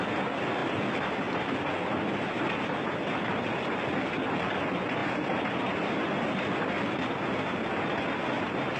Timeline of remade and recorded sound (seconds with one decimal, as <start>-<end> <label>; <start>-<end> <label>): 0.0-5.0 recorded; 5.0-7.1 remade; 7.1-8.8 recorded